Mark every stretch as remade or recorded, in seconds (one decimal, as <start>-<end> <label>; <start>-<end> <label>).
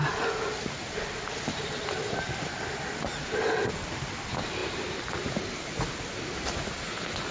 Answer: 0.0-7.3 recorded